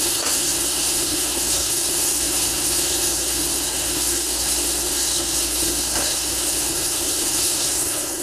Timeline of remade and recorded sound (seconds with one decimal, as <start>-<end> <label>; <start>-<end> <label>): 0.0-8.2 remade